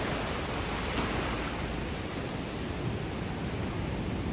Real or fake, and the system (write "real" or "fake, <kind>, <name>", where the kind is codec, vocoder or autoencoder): real